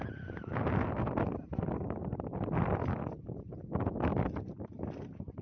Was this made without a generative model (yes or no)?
yes